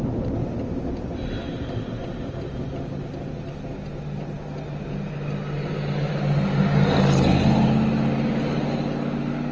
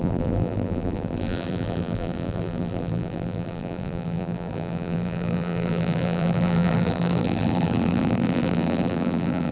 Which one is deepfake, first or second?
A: second